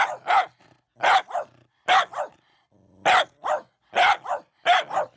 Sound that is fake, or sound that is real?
real